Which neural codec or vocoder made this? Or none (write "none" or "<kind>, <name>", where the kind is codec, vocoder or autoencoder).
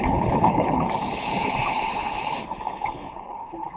codec, HILCodec